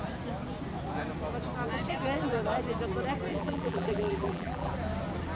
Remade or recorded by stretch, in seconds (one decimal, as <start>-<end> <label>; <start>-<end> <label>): 0.0-3.3 recorded; 3.3-4.7 remade; 4.7-5.3 recorded